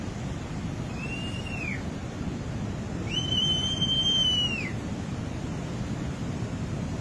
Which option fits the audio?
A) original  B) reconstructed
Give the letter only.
A